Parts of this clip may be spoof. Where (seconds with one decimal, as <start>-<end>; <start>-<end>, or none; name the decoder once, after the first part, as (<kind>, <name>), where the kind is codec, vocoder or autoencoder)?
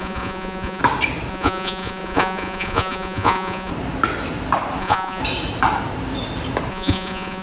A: 0.0-0.8 (vocoder, Vocos); 1.3-3.7; 4.8-5.2; 6.7-7.4